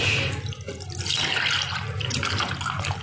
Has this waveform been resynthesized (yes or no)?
no